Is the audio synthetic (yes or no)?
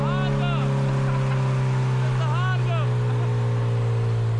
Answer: no